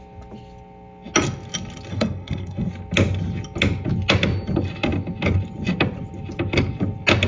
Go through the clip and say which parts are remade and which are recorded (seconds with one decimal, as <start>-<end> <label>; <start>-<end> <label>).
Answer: 0.0-1.9 recorded; 1.9-2.7 remade; 2.7-7.3 recorded